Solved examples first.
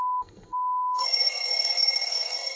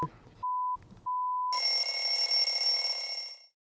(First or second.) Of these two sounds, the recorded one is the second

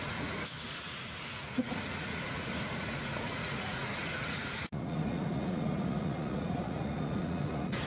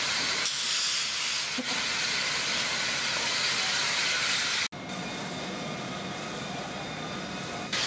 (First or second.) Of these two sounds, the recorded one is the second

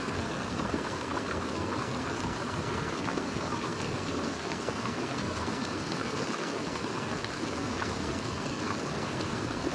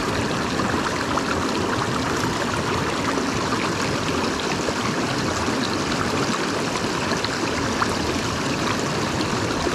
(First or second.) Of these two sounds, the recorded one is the second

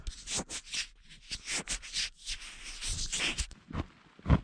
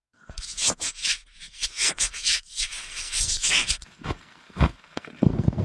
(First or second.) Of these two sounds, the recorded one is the first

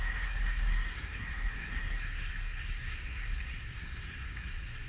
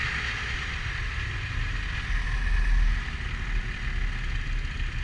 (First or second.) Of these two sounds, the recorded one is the second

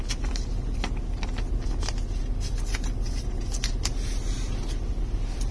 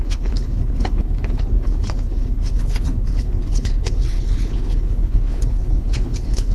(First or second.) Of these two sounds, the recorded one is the first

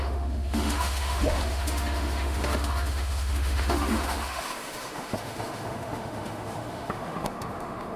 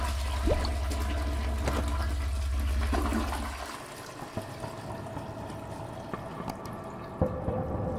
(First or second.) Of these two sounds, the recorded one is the second